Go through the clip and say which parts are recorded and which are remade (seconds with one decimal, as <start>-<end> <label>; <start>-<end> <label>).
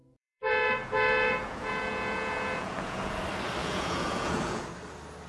0.0-3.2 remade; 3.2-3.6 recorded; 3.6-4.6 remade; 4.6-5.3 recorded